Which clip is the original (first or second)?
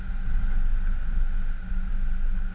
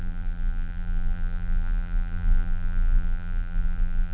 first